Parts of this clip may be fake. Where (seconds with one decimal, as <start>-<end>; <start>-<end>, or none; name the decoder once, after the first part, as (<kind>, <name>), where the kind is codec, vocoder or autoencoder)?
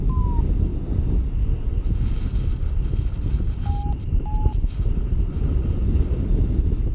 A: none